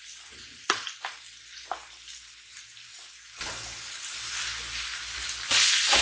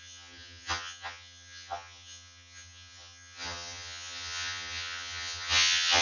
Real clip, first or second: first